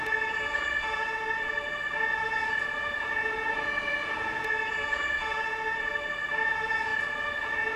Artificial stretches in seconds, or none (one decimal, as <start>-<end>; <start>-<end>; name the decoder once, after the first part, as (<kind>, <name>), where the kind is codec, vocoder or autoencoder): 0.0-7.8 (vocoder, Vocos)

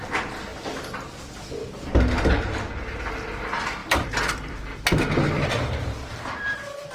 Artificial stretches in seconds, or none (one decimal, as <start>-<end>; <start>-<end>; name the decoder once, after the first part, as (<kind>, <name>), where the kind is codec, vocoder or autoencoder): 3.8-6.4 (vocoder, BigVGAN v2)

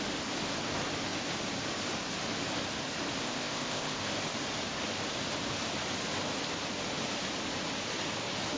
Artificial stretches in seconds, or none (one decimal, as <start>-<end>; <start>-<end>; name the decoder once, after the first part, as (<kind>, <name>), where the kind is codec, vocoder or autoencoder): 3.2-4.0 (codec, ZipCodec)

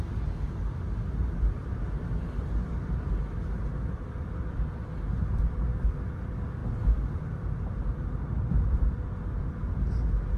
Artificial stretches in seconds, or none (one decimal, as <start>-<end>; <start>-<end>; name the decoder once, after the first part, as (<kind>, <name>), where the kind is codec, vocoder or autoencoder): 4.0-6.1 (vocoder, BigVGAN v2); 6.6-7.7

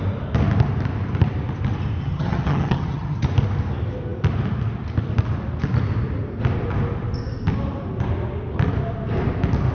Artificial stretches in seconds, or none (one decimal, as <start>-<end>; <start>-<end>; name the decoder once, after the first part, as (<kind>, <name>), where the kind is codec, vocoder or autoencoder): 2.0-3.2 (vocoder, HiFi-GAN)

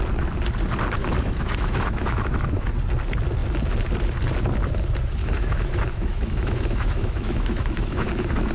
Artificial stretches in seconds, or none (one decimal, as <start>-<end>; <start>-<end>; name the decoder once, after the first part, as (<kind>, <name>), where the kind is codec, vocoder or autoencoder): 1.0-2.7 (autoencoder, DAC-VAE); 5.2-8.5